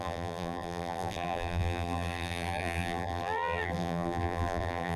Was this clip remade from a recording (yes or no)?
yes